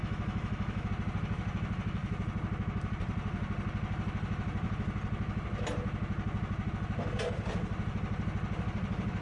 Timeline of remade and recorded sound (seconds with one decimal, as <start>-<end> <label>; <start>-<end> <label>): 0.0-0.9 remade; 0.9-9.2 recorded